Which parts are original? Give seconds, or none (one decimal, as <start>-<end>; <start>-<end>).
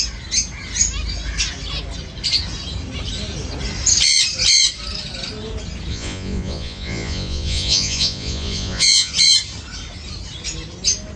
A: 0.0-5.9; 9.1-11.2